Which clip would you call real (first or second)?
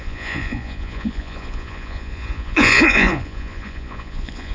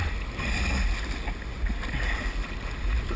second